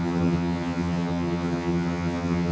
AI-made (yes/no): yes